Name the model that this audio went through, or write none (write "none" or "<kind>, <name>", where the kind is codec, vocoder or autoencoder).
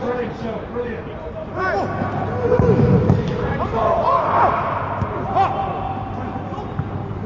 none